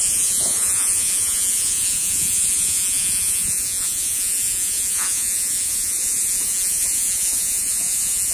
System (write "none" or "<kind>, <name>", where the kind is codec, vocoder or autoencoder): vocoder, Vocos